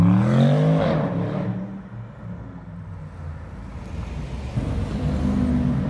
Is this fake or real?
real